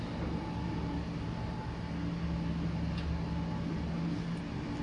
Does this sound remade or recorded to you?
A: recorded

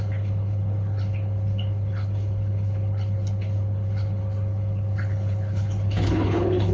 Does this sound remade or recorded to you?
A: remade